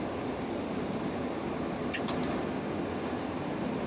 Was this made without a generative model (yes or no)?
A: yes